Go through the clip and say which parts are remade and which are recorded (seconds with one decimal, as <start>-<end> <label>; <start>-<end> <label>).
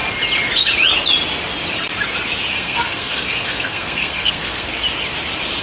0.0-2.5 recorded; 2.5-4.7 remade; 4.7-5.6 recorded